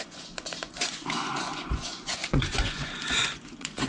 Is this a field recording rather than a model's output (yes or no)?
no